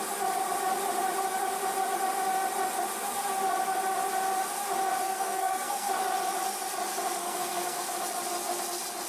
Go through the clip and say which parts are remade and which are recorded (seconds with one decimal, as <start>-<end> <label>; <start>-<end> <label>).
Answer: 0.0-5.0 recorded; 5.0-5.9 remade; 5.9-7.2 recorded; 7.2-8.0 remade; 8.0-9.1 recorded